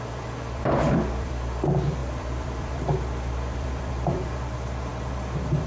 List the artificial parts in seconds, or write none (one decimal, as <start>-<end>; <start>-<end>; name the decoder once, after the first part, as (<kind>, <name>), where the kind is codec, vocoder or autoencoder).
0.0-5.7 (vocoder, BigVGAN v2)